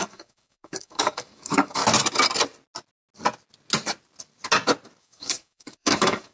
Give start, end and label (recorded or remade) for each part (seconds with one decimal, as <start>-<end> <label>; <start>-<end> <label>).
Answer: 0.0-1.8 remade; 1.8-5.0 recorded; 5.0-6.3 remade